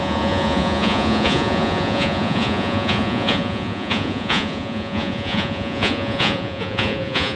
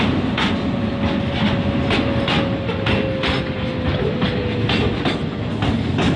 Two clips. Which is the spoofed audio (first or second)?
first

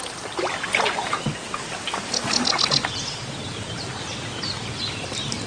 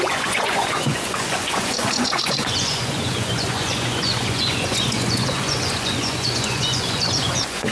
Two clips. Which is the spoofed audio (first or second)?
second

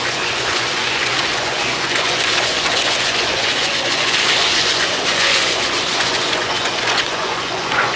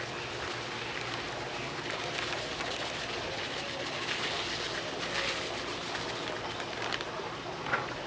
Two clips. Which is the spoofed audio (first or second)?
first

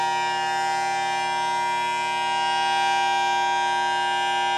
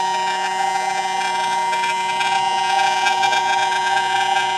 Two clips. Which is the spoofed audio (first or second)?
second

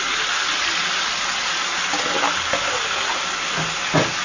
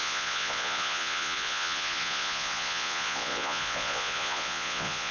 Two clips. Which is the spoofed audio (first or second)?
second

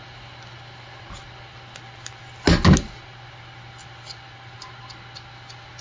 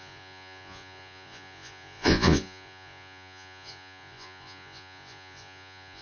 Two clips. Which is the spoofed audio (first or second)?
second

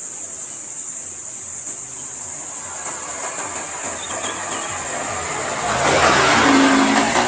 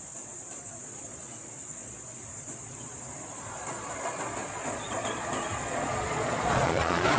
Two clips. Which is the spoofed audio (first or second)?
second